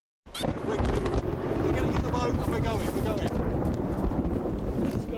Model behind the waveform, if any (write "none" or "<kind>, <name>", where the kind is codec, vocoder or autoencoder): none